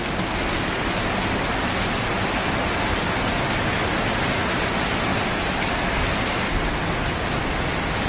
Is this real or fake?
real